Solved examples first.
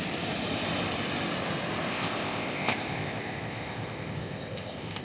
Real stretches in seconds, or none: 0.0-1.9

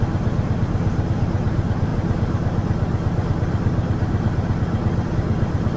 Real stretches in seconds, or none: 0.0-5.8

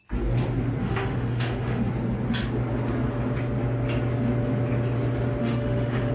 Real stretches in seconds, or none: 0.0-0.8; 1.9-5.4

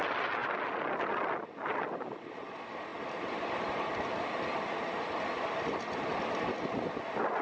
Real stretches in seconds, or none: 0.0-7.4